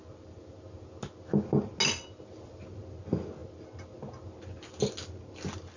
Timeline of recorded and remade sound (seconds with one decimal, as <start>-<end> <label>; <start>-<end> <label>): 0.0-5.8 recorded

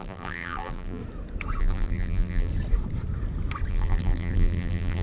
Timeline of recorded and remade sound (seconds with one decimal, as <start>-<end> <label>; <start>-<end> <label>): 0.0-1.0 remade; 1.0-1.6 recorded; 1.6-2.5 remade; 2.5-3.7 recorded; 3.7-5.0 remade

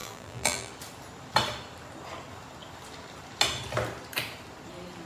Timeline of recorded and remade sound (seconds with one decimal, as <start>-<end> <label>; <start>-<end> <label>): 0.0-0.7 remade; 0.7-5.1 recorded

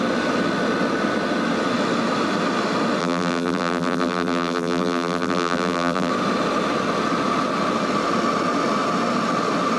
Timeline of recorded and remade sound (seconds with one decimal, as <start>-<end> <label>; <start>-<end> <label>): 0.0-3.0 recorded; 3.0-6.1 remade; 6.1-9.8 recorded

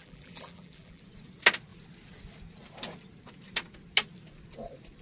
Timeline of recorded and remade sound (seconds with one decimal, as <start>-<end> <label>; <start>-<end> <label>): 0.0-1.0 remade; 1.0-5.0 recorded

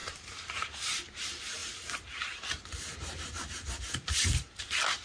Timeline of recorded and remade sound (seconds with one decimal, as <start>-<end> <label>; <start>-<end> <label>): 0.0-1.0 remade; 1.0-1.6 recorded; 1.6-4.6 remade; 4.6-5.0 recorded

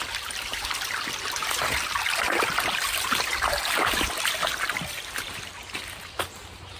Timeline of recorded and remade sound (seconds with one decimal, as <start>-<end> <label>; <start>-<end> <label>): 0.0-1.4 recorded; 1.4-5.5 remade; 5.5-6.8 recorded